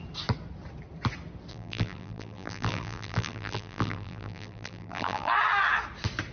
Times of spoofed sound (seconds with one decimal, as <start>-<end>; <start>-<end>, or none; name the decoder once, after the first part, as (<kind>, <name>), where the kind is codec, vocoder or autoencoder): 1.5-5.3 (vocoder, BigVGAN v2)